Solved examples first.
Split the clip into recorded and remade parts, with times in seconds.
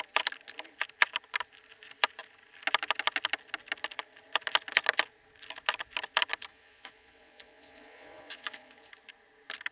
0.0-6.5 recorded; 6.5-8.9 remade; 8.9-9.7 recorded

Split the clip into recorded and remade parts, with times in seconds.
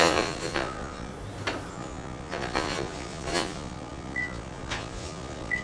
0.0-1.1 remade; 1.1-1.7 recorded; 1.7-5.6 remade